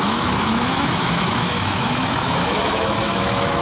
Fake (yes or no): yes